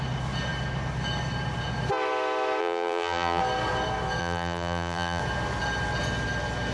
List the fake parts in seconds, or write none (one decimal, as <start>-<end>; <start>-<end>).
2.6-3.4; 4.2-5.2